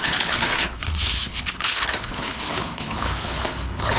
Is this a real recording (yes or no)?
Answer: no